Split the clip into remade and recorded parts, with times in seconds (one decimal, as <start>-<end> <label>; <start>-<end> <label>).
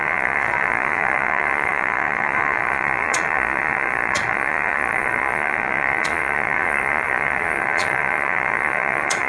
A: 0.0-9.3 remade